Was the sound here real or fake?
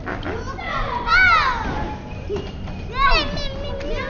real